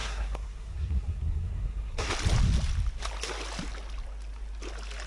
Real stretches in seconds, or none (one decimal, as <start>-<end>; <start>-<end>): 2.1-5.1